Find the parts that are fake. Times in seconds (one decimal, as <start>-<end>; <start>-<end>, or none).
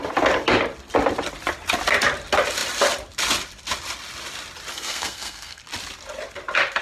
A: 4.7-5.6